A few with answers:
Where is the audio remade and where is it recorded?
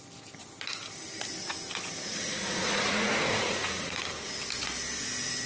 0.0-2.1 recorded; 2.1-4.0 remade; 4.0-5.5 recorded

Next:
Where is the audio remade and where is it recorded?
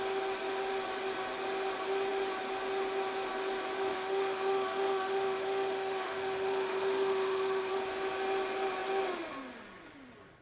0.0-3.9 recorded; 3.9-7.7 remade; 7.7-10.4 recorded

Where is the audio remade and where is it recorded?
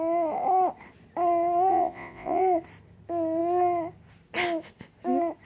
0.0-1.7 recorded; 1.7-2.4 remade; 2.4-5.5 recorded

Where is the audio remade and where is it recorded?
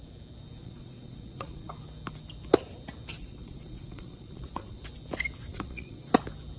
0.0-0.6 recorded; 0.6-1.7 remade; 1.7-3.1 recorded; 3.1-4.8 remade; 4.8-5.5 recorded; 5.5-6.1 remade; 6.1-6.6 recorded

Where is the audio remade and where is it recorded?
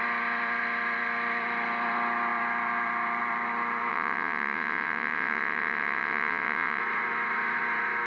0.0-3.9 recorded; 3.9-6.8 remade; 6.8-8.1 recorded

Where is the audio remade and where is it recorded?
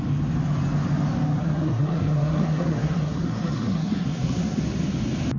0.0-1.4 recorded; 1.4-4.6 remade; 4.6-5.4 recorded